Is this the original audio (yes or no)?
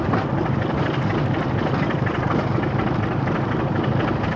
yes